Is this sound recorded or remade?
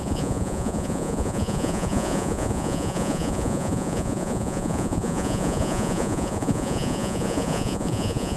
remade